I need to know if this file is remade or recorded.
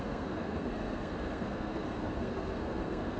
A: remade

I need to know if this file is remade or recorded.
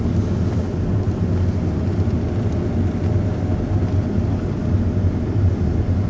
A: recorded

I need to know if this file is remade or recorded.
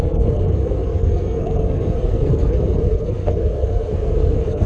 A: remade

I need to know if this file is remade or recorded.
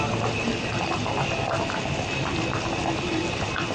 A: recorded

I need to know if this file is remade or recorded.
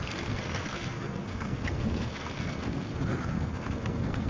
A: remade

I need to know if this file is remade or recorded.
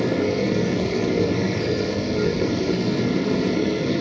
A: remade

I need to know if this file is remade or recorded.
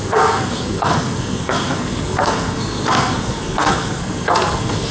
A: remade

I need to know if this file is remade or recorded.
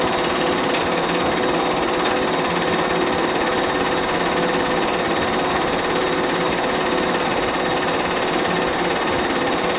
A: recorded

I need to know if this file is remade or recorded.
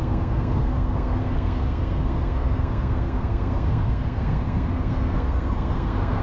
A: remade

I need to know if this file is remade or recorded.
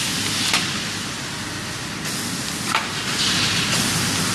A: recorded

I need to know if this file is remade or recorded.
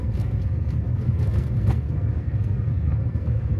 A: remade